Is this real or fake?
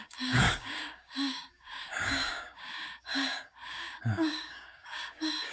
fake